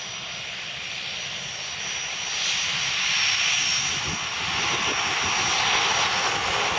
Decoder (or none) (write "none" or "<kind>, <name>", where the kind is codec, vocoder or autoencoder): none